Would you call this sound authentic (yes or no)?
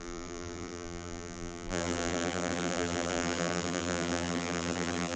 no